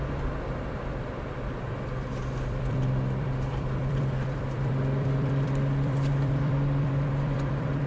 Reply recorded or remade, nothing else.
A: remade